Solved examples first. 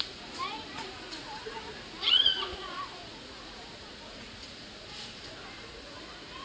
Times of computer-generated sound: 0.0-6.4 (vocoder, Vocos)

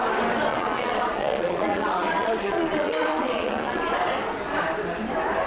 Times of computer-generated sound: 0.5-3.8 (vocoder, Vocos)

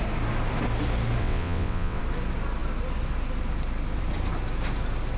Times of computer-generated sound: 1.2-2.0 (vocoder, WaveNeXt)

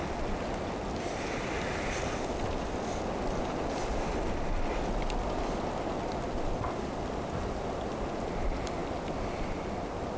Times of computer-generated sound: none

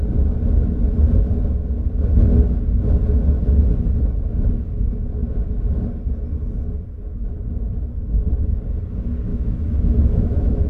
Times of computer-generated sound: 9.3-10.7 (autoencoder, DAC-VAE)

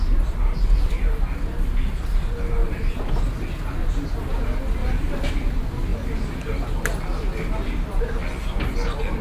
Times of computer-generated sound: 2.6-3.2 (vocoder, BigVGAN v2); 4.8-5.3

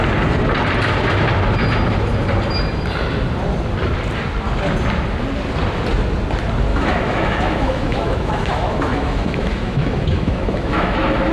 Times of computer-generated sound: 6.7-11.3 (autoencoder, DAC-VAE)

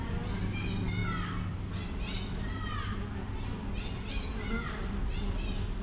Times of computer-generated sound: none